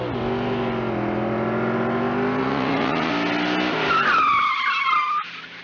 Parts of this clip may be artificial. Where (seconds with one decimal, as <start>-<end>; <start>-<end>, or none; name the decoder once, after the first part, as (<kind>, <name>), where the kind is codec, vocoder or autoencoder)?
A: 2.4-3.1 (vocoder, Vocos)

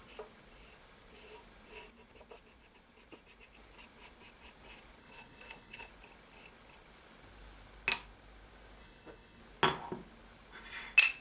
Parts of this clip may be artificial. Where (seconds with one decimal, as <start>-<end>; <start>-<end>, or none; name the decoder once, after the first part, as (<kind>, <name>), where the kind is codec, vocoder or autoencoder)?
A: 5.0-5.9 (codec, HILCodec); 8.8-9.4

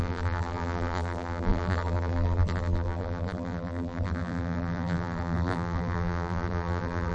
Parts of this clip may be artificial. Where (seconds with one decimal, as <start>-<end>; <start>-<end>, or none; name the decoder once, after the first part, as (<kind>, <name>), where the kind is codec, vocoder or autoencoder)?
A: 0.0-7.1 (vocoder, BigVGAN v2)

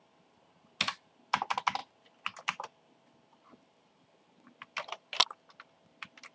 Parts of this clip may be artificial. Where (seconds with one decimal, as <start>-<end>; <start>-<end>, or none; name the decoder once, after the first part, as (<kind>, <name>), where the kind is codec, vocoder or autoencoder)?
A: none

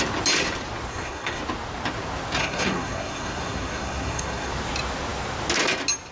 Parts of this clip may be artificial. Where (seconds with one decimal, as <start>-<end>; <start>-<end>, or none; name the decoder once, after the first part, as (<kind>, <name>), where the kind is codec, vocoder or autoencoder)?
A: 0.9-1.4 (codec, SNAC); 2.4-4.5

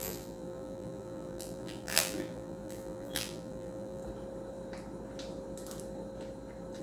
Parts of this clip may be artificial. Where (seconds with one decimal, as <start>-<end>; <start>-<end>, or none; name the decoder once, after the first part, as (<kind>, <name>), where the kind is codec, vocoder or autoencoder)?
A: 0.0-4.0 (vocoder, BigVGAN v2)

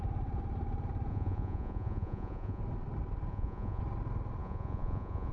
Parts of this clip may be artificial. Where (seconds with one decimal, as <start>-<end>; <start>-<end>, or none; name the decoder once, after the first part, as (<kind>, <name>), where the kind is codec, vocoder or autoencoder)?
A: 1.1-2.6 (vocoder, Vocos); 3.3-3.8; 4.4-5.3

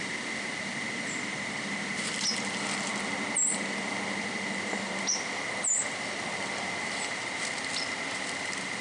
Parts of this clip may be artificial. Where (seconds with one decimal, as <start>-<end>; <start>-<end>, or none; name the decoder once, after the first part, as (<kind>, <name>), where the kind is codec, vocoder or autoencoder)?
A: none